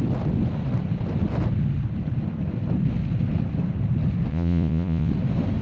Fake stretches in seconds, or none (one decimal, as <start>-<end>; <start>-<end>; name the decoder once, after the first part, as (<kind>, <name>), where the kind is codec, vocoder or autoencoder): 4.3-5.1 (vocoder, Vocos)